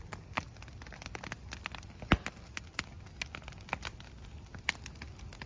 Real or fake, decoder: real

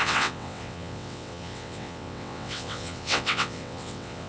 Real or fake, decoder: fake, vocoder, WaveNeXt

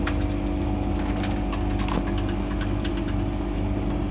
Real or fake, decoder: real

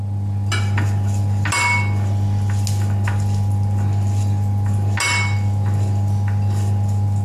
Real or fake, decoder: real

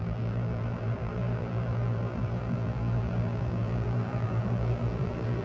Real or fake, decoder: fake, vocoder, BigVGAN v2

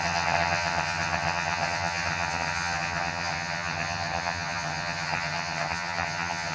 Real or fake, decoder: fake, vocoder, HiFi-GAN